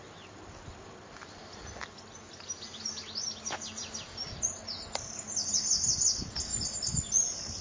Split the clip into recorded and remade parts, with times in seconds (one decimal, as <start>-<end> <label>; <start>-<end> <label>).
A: 0.0-7.6 recorded